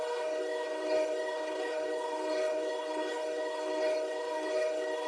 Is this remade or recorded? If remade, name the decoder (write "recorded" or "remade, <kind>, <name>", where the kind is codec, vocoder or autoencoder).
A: remade, codec, HILCodec